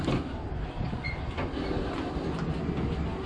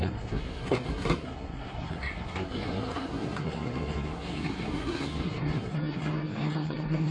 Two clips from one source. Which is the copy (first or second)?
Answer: second